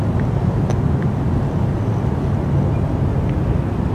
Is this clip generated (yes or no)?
no